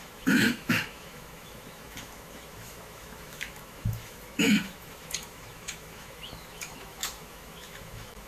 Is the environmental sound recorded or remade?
remade